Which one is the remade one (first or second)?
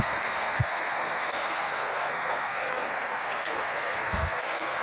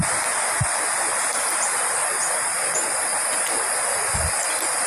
first